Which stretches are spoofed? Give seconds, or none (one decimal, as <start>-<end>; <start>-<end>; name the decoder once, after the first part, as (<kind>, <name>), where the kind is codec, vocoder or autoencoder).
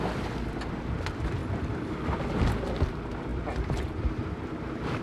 3.3-5.0 (vocoder, BigVGAN v2)